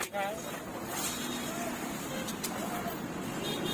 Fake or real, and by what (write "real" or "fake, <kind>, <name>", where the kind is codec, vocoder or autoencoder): real